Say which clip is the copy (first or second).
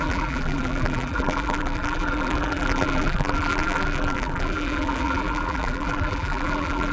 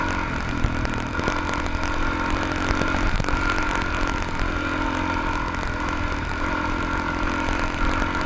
first